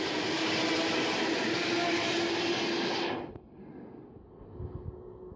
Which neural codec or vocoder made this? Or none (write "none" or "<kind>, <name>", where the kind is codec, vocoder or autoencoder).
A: none